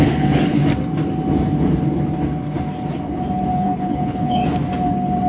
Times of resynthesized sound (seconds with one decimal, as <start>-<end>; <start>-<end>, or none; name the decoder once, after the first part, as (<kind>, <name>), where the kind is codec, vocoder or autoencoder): 0.0-0.6 (codec, HILCodec); 3.5-4.4